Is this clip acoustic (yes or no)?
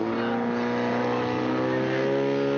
yes